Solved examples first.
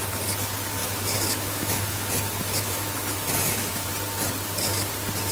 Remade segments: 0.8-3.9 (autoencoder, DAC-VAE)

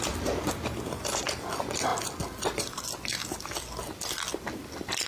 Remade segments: 0.0-1.9 (vocoder, BigVGAN v2); 2.6-3.2; 4.3-5.1

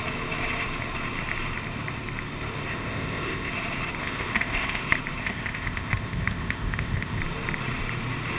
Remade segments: 2.7-3.5 (codec, ZipCodec); 4.0-4.8; 5.2-7.2

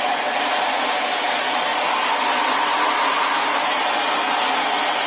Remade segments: none

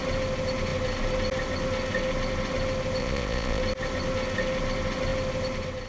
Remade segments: 3.0-3.6 (vocoder, Vocos)

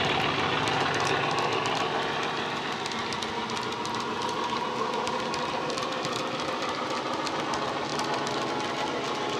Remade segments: none